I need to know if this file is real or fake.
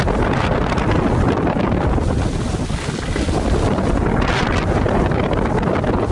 real